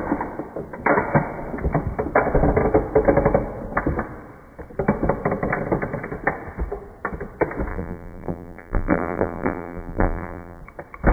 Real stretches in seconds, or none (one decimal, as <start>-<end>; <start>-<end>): 0.0-7.7; 10.6-11.1